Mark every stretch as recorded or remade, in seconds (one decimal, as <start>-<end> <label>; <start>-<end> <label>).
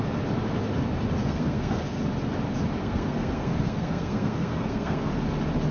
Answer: 0.0-1.2 recorded; 1.2-2.0 remade; 2.0-2.8 recorded; 2.8-5.1 remade; 5.1-5.7 recorded